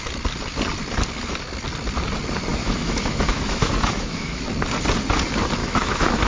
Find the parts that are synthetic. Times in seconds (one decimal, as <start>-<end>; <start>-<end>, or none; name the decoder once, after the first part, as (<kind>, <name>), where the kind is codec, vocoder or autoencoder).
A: 2.5-4.5 (autoencoder, DAC-VAE); 5.6-6.3